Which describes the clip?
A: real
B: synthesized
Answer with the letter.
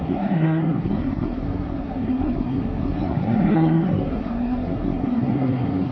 B